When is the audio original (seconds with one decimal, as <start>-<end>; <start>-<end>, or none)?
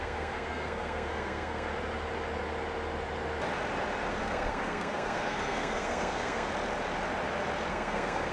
1.7-4.1; 6.5-7.7